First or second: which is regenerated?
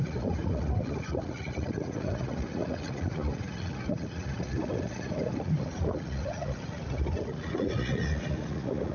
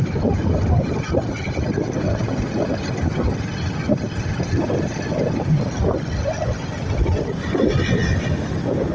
first